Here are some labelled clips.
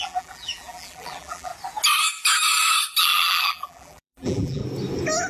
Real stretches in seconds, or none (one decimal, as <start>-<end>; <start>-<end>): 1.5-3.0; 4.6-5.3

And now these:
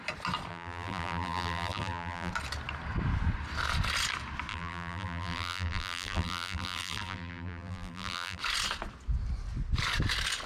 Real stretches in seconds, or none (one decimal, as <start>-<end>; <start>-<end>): 0.0-0.5; 2.3-4.5; 8.4-10.5

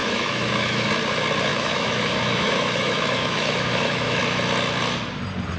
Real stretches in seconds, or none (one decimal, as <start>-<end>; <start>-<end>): 0.9-1.5; 4.2-5.6

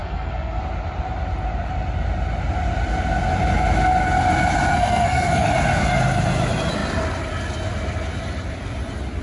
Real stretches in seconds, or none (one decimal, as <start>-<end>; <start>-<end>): 0.6-4.7; 5.5-9.2